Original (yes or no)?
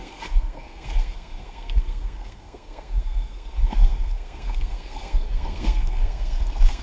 no